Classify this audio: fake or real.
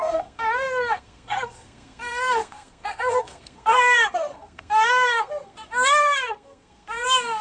fake